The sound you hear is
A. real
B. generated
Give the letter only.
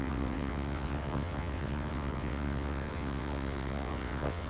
B